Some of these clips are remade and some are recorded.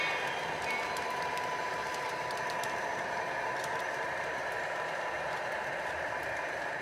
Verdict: remade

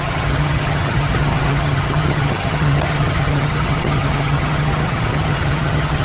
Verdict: remade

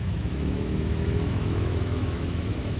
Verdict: remade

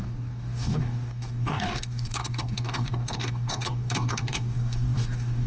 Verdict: remade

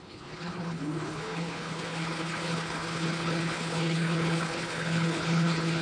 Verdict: remade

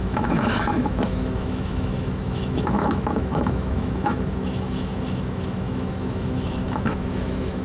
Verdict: remade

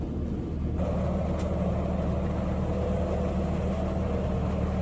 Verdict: recorded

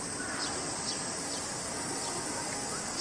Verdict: recorded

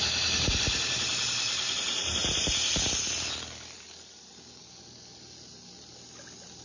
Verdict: recorded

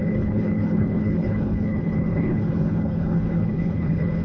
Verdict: remade